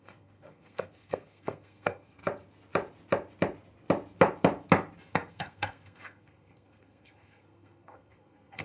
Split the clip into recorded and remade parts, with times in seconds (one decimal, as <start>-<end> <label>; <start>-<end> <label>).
0.0-2.2 remade; 2.2-5.1 recorded; 5.1-8.6 remade